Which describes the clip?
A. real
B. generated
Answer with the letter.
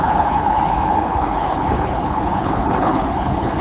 B